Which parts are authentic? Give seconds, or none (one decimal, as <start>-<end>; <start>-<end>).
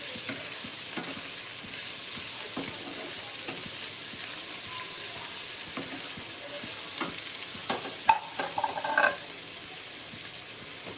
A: 0.0-11.0